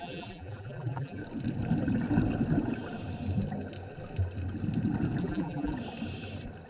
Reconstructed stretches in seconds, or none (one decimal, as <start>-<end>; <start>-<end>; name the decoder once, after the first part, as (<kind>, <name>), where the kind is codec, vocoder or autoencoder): 0.0-1.2 (vocoder, BigVGAN v2); 5.2-5.7